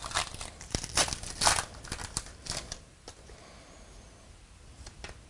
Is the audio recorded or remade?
remade